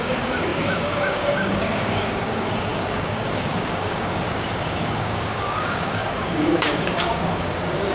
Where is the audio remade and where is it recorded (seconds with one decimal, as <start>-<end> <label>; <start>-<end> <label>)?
0.0-7.9 remade